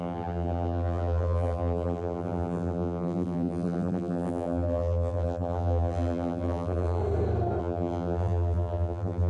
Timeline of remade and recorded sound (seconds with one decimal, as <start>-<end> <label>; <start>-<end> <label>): 0.0-7.0 remade; 7.0-7.6 recorded; 7.6-9.3 remade